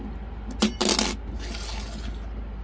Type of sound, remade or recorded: recorded